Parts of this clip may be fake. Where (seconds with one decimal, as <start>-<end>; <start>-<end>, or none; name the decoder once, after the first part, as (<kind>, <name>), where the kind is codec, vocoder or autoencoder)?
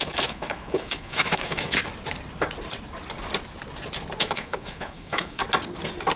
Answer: 0.0-1.8 (autoencoder, DAC-VAE); 4.2-5.4